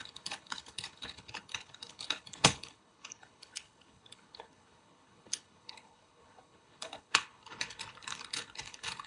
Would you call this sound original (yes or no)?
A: no